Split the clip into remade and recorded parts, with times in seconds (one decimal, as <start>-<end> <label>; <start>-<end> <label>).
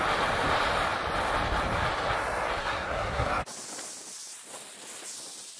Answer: 0.0-2.6 recorded; 2.6-3.4 remade; 3.4-5.6 recorded